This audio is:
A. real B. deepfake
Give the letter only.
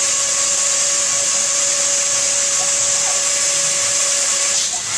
A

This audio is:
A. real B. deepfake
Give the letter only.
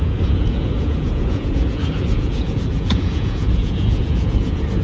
B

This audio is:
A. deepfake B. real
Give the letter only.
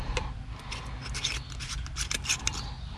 B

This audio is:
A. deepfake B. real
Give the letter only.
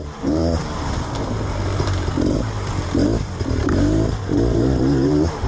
A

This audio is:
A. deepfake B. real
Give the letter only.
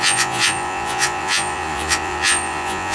A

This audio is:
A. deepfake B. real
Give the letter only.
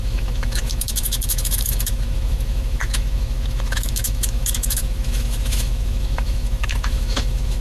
A